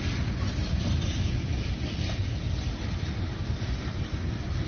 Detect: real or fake real